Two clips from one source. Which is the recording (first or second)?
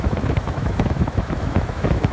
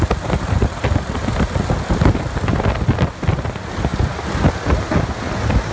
second